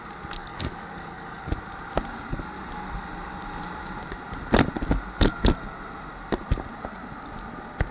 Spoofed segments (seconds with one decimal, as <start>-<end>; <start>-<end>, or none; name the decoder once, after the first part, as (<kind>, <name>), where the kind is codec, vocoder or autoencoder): 0.4-1.5 (codec, DAC)